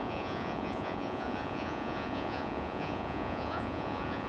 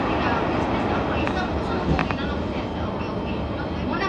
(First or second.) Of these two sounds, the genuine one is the second